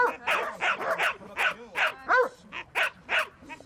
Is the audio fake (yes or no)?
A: no